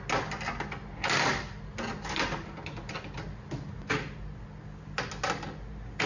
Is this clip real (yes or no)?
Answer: yes